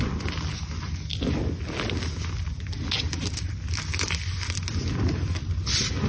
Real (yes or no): yes